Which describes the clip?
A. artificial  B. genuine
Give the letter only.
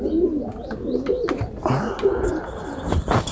B